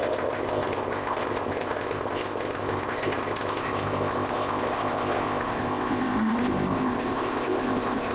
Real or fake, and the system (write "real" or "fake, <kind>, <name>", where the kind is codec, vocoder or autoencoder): fake, codec, ZipCodec